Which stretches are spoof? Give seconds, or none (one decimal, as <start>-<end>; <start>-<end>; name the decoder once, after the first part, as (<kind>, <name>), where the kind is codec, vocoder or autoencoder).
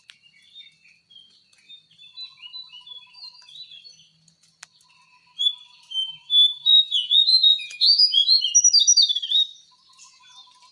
6.5-8.4 (vocoder, Vocos)